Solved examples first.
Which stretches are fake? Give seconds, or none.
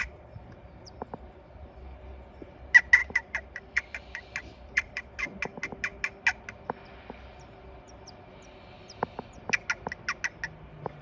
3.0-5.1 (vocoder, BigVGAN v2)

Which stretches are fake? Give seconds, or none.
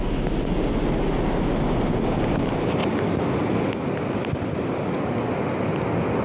2.8-5.1 (vocoder, BigVGAN v2)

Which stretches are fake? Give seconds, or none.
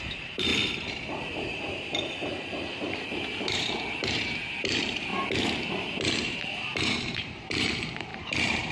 0.0-0.5 (vocoder, BigVGAN v2); 1.2-5.1; 5.7-8.7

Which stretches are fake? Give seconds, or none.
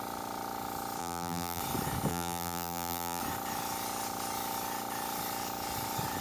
1.0-1.6 (vocoder, BigVGAN v2); 2.1-3.2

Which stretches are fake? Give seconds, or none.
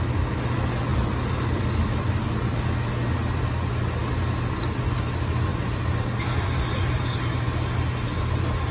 5.5-7.4 (vocoder, BigVGAN v2)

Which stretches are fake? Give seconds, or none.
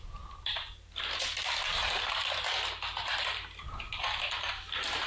0.0-1.8 (vocoder, BigVGAN v2); 3.8-5.1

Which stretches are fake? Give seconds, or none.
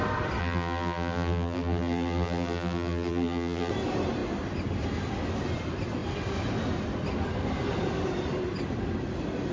0.4-3.7 (vocoder, BigVGAN v2)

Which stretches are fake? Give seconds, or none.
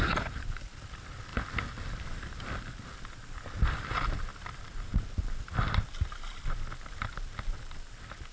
0.0-1.3 (vocoder, BigVGAN v2); 3.5-4.3